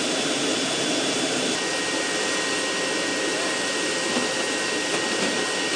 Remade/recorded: recorded